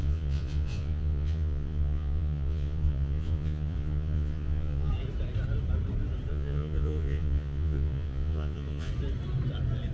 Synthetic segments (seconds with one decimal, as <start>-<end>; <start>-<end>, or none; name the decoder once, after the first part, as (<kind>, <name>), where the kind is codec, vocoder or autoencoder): 0.0-4.9 (vocoder, Vocos); 6.3-8.9